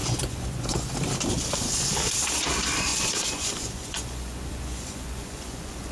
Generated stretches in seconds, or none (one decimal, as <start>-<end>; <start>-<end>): 0.0-0.9; 2.9-5.9